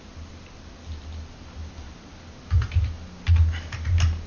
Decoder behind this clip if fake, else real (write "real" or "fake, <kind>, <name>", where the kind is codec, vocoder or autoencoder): real